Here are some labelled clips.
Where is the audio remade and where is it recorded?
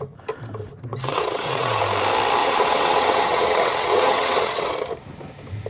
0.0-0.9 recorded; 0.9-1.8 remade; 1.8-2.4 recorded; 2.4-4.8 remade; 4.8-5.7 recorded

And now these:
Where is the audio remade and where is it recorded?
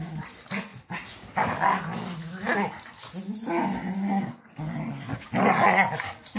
0.0-6.4 recorded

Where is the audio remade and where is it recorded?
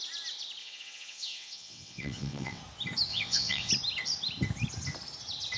0.0-0.6 recorded; 0.6-2.6 remade; 2.6-3.1 recorded; 3.1-3.7 remade; 3.7-5.6 recorded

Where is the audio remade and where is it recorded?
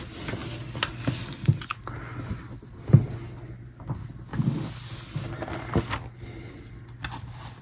0.0-7.6 recorded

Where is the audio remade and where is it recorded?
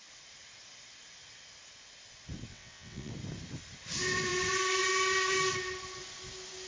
0.0-2.5 recorded; 2.5-3.1 remade; 3.1-6.7 recorded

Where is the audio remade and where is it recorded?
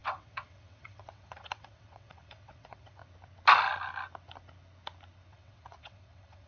0.0-3.0 remade; 3.0-5.3 recorded; 5.3-6.5 remade